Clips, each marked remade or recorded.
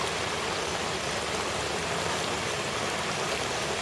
recorded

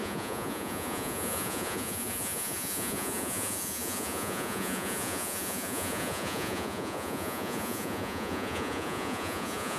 remade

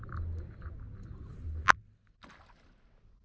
recorded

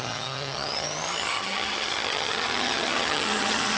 remade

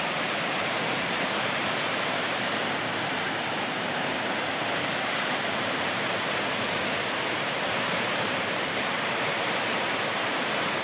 remade